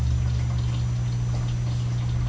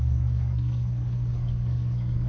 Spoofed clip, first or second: second